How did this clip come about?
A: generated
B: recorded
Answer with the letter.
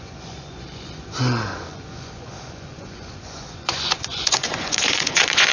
A